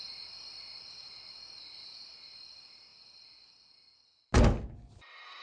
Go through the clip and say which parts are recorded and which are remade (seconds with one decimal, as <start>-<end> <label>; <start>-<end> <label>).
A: 0.0-5.4 recorded